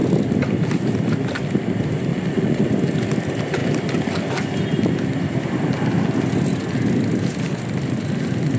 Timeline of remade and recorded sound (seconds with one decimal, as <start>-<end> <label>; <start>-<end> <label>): 0.0-2.1 recorded; 2.1-2.6 remade; 2.6-8.6 recorded